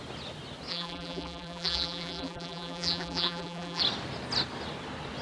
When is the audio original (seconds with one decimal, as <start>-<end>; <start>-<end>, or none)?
0.0-0.7; 3.8-5.2